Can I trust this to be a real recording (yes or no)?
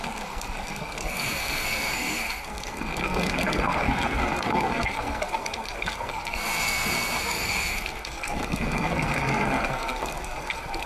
no